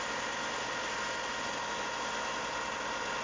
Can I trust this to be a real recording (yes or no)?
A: yes